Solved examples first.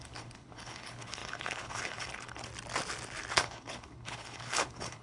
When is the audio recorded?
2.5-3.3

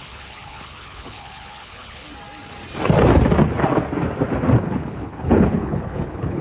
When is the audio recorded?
2.1-4.6

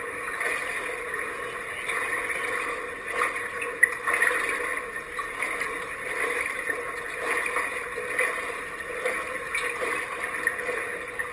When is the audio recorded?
0.0-11.3

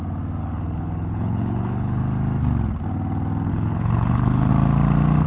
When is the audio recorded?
0.0-0.4; 2.0-3.5; 4.5-5.3

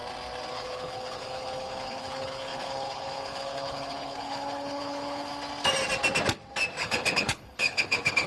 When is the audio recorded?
0.0-0.5; 5.3-6.8

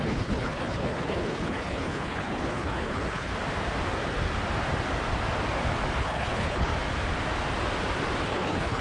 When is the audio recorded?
3.3-6.0; 6.7-8.3

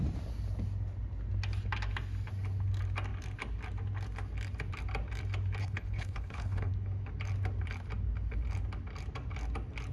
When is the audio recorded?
0.0-5.6; 6.7-9.9